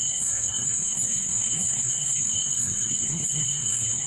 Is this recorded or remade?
remade